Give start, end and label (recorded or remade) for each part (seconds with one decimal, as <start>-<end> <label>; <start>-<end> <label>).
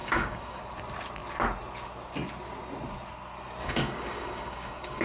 0.0-0.6 remade; 0.6-3.6 recorded; 3.6-5.0 remade